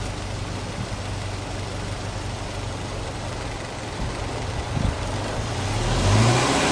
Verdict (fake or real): real